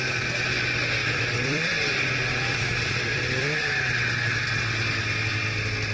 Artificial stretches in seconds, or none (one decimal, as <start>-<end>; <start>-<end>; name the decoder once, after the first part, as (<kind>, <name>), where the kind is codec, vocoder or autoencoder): 1.0-3.9 (vocoder, BigVGAN v2)